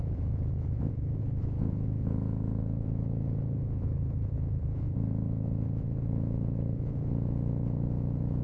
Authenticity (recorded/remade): remade